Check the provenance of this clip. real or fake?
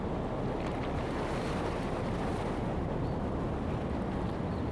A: real